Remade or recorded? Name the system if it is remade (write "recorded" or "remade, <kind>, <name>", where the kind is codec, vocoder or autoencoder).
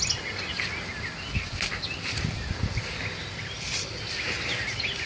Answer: recorded